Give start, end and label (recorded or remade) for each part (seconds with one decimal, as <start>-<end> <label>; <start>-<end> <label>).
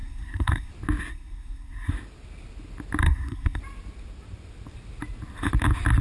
0.0-0.7 remade; 0.7-1.1 recorded; 1.1-1.9 remade; 1.9-3.0 recorded; 3.0-3.6 remade; 3.6-6.0 recorded